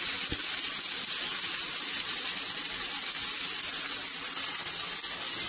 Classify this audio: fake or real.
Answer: real